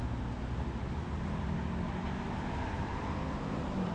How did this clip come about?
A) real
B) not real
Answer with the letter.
A